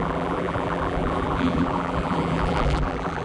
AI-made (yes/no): yes